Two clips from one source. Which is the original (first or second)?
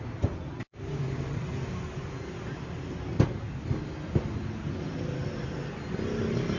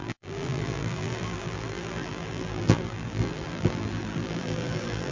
first